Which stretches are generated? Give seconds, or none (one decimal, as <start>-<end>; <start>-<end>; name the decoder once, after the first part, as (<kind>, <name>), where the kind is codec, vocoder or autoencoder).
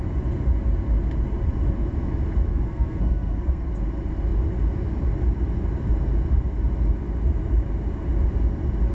2.5-3.7 (codec, SNAC)